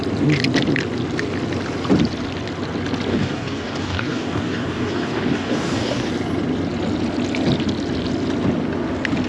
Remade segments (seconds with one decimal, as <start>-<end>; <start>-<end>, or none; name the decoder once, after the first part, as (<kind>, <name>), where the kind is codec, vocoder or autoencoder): 3.1-6.1 (codec, DAC)